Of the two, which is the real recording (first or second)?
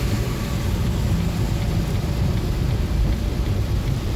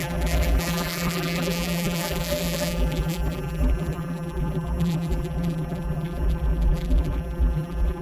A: first